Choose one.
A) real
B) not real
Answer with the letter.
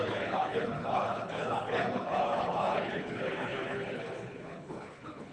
B